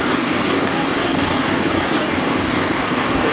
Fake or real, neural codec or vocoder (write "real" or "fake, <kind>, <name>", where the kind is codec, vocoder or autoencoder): fake, codec, DAC